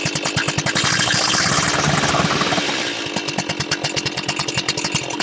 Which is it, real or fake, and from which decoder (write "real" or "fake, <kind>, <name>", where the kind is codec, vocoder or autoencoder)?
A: real